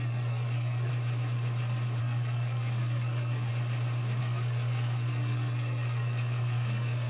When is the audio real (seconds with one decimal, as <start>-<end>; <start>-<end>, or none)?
0.9-2.0; 3.5-4.2